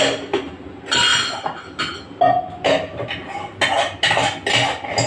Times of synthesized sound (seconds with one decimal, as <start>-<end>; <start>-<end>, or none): none